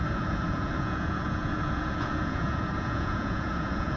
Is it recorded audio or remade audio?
remade